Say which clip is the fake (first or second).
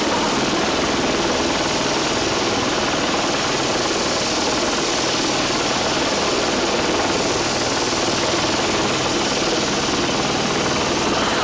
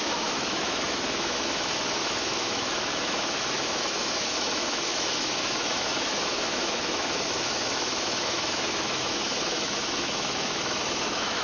second